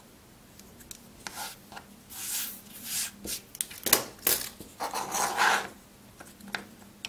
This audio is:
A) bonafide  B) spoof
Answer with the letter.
A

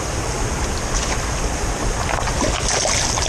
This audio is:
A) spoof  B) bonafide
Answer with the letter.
B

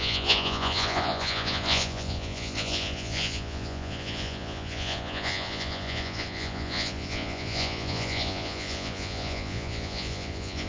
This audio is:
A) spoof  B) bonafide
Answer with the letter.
A